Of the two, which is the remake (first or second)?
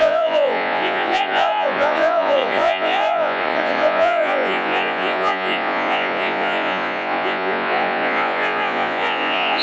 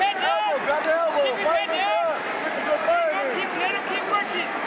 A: first